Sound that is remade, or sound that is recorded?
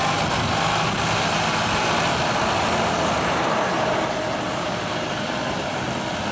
recorded